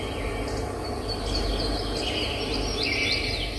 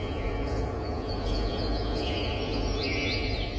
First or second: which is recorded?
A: first